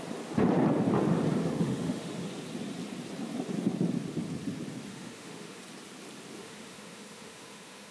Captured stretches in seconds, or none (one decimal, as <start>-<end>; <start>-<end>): 0.0-1.4; 2.3-4.9; 5.6-6.4